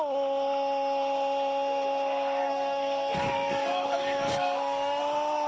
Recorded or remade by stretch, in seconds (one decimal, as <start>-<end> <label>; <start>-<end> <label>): 0.0-2.4 recorded; 2.4-5.0 remade; 5.0-5.5 recorded